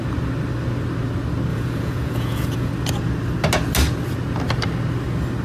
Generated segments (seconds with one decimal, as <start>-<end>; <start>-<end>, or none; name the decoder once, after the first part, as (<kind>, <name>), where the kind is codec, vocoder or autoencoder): 1.5-2.7 (vocoder, Vocos)